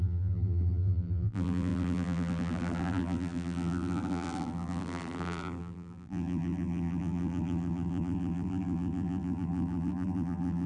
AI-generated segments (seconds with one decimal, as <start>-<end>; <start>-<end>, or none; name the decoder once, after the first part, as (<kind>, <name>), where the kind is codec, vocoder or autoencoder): 0.0-10.7 (vocoder, BigVGAN v2)